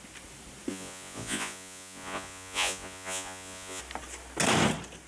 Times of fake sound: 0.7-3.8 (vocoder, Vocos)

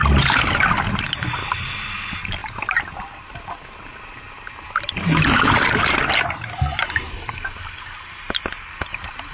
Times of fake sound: none